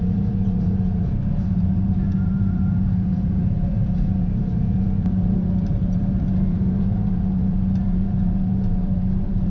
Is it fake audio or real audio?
fake